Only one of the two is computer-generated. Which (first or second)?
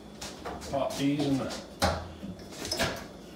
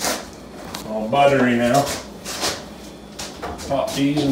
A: first